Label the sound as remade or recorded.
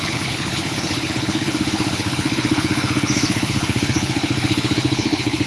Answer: remade